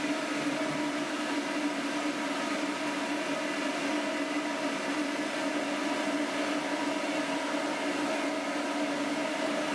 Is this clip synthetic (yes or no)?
no